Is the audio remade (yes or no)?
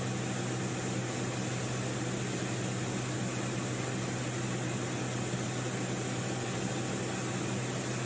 no